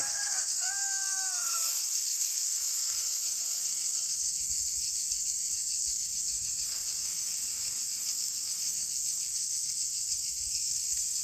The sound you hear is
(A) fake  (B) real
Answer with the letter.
A